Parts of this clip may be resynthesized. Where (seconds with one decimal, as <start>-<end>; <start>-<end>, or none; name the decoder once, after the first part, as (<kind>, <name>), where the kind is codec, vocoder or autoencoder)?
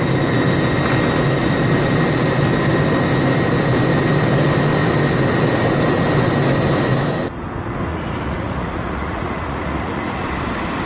7.9-10.2 (vocoder, Vocos)